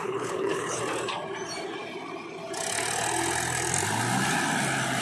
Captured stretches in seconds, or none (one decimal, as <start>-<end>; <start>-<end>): 0.8-5.0